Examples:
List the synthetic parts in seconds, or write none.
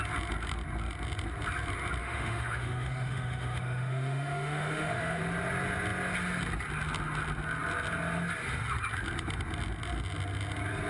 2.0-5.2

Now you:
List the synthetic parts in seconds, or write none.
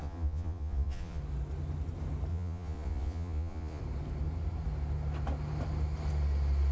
0.0-1.2; 2.3-3.8